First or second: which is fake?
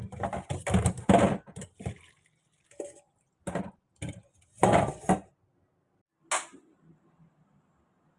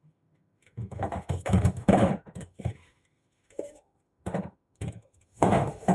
second